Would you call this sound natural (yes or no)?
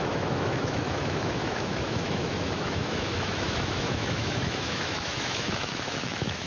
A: no